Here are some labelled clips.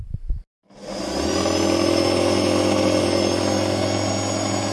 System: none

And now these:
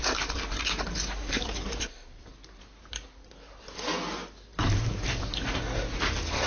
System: none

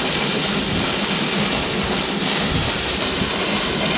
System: none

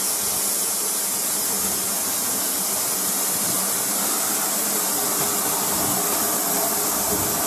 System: none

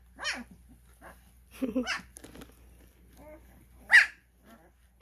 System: none